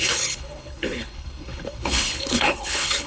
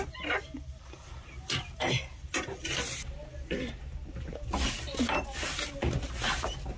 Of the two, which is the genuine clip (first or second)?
second